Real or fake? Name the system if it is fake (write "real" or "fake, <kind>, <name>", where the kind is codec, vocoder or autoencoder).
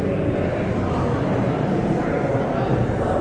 fake, vocoder, BigVGAN v2